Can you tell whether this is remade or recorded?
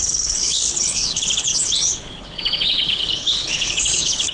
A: remade